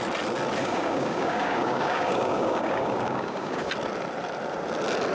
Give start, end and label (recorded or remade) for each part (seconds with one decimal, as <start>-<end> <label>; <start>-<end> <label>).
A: 0.0-0.6 recorded; 0.6-3.7 remade; 3.7-5.1 recorded